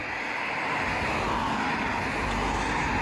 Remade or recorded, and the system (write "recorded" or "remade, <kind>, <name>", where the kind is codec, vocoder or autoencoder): recorded